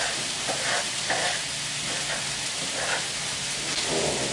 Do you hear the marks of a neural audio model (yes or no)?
no